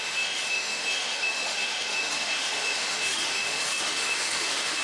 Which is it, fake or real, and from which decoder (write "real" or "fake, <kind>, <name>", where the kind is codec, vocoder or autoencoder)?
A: fake, autoencoder, DAC-VAE